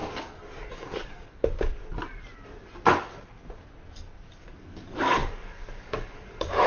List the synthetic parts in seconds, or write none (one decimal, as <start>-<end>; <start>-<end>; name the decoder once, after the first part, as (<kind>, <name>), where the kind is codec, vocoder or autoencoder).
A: 0.0-1.8 (codec, DAC); 4.4-6.7